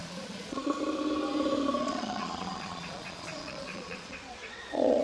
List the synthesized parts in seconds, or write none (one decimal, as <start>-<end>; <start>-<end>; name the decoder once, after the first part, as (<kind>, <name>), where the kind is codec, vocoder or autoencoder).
0.0-0.7 (vocoder, Vocos); 1.8-5.0